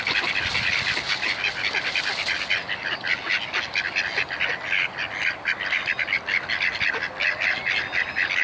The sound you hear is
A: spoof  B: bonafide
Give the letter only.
B